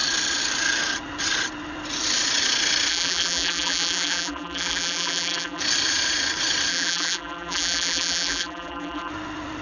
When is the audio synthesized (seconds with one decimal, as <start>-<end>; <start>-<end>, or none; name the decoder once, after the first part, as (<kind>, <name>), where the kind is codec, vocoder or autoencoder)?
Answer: 2.9-5.6 (vocoder, BigVGAN v2); 6.7-9.1